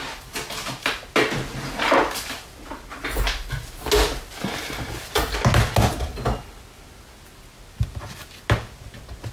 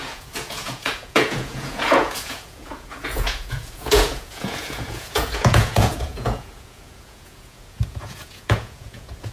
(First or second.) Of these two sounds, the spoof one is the second